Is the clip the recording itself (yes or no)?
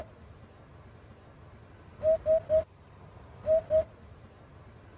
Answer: yes